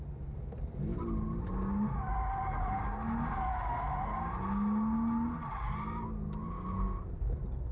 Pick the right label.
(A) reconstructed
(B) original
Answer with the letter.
B